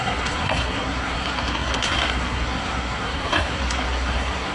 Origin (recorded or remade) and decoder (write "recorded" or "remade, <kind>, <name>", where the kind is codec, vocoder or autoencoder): remade, codec, SNAC